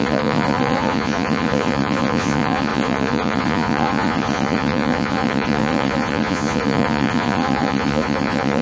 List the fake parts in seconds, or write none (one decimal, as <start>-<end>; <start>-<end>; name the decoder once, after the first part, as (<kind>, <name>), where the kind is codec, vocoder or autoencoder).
0.0-8.6 (vocoder, Vocos)